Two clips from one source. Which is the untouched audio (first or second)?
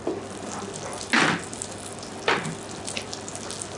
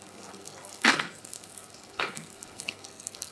first